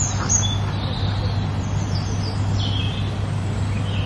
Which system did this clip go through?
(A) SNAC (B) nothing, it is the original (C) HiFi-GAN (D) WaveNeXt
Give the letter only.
B